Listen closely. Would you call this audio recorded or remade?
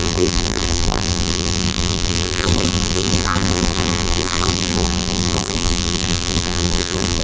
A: remade